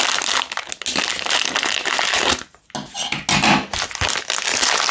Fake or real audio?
real